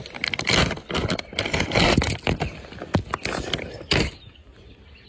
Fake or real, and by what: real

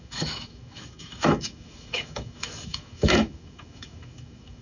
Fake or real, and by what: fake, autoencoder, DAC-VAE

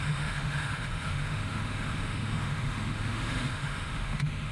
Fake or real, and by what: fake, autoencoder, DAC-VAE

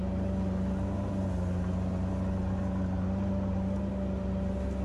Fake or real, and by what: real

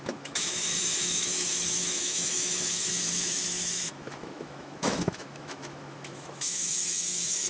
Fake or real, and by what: fake, autoencoder, DAC-VAE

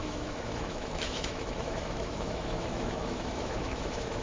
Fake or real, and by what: fake, autoencoder, DAC-VAE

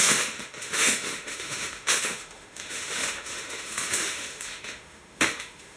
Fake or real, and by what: fake, autoencoder, DAC-VAE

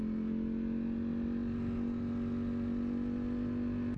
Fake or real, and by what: real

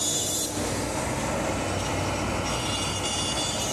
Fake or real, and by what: real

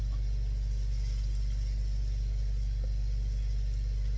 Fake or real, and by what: real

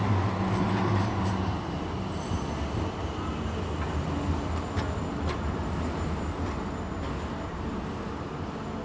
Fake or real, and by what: real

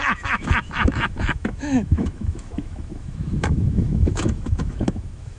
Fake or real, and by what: fake, autoencoder, DAC-VAE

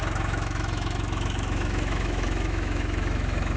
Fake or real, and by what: fake, autoencoder, DAC-VAE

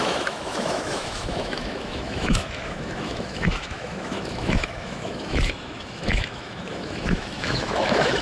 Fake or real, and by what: fake, autoencoder, DAC-VAE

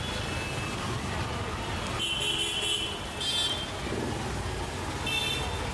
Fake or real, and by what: real